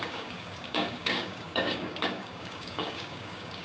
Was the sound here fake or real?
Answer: fake